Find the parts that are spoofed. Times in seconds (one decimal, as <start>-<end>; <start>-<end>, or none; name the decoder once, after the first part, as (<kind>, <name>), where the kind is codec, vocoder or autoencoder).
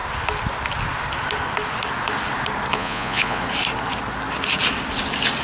2.7-3.4 (vocoder, Vocos)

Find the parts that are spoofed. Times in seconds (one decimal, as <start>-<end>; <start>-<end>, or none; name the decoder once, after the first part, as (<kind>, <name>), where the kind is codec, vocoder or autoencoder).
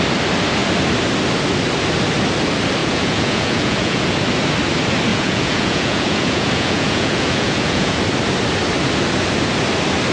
2.8-4.1 (vocoder, Vocos); 5.1-8.0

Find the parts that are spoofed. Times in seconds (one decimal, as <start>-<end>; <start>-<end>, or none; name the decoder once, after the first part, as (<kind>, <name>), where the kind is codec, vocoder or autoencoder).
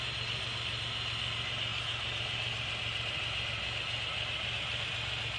none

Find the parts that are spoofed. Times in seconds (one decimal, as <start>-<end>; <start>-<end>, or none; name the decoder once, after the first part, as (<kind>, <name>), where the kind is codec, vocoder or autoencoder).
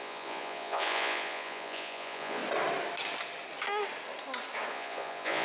0.0-2.4 (vocoder, Vocos); 4.7-5.4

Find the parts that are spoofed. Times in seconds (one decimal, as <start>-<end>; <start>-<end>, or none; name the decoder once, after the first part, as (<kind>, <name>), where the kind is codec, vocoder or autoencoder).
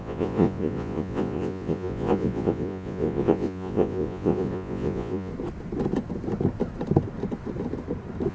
0.0-5.3 (vocoder, Vocos)